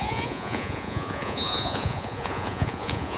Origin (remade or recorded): remade